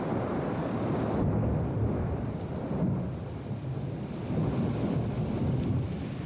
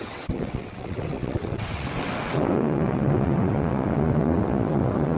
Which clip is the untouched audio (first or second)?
first